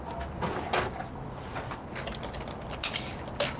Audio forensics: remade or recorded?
recorded